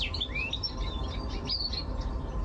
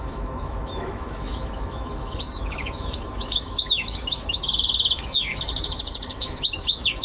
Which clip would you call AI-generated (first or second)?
second